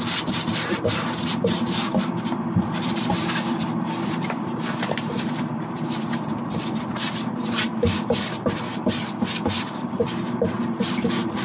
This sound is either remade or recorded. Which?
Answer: remade